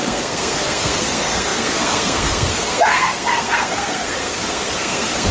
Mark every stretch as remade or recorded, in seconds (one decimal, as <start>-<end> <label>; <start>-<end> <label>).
0.0-5.3 remade

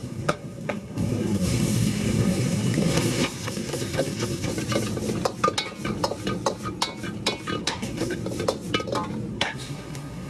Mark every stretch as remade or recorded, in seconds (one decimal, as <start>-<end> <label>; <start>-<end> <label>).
0.0-4.5 remade; 4.5-7.6 recorded; 7.6-8.2 remade; 8.2-9.3 recorded; 9.3-10.3 remade

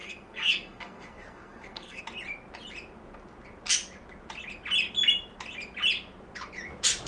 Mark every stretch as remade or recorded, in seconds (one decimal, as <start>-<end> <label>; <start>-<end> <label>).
0.0-2.0 remade; 2.0-7.1 recorded

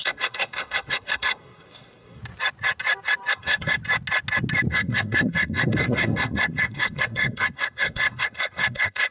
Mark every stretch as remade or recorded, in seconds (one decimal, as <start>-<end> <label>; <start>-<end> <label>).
0.0-2.2 remade; 2.2-3.3 recorded; 3.3-3.8 remade; 3.8-4.7 recorded; 4.7-9.1 remade

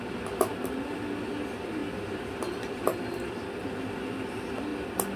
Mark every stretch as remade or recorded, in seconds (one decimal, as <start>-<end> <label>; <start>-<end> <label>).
0.0-5.2 recorded

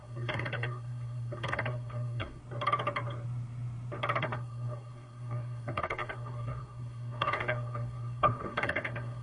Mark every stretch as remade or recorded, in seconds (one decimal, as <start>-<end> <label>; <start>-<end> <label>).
0.0-2.4 remade; 2.4-4.2 recorded; 4.2-9.2 remade

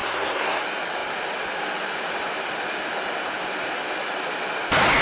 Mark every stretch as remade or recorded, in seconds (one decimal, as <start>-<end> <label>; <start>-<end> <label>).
0.0-0.6 remade; 0.6-5.0 recorded

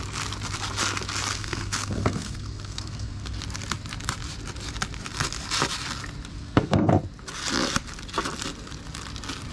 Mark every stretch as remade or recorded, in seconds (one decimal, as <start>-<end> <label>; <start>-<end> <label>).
0.0-1.3 recorded; 1.3-3.4 remade; 3.4-6.3 recorded; 6.3-6.9 remade; 6.9-9.5 recorded